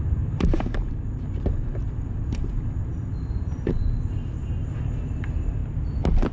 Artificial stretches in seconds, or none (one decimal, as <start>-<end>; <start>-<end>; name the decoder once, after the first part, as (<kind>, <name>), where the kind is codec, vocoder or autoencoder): 0.0-5.6 (vocoder, BigVGAN v2)